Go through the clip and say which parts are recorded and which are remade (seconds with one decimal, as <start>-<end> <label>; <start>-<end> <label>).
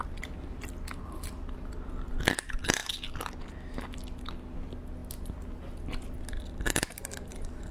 0.0-7.7 recorded